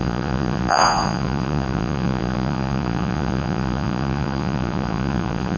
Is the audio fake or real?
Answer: fake